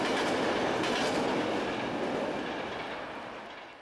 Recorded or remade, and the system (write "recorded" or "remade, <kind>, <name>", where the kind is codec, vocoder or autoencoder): recorded